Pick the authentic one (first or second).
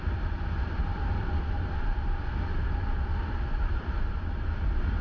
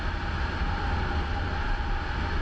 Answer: second